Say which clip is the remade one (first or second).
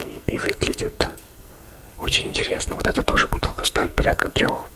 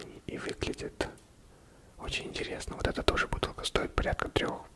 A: first